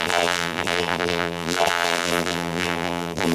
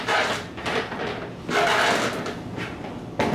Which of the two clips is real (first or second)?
second